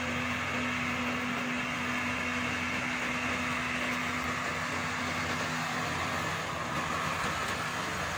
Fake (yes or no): no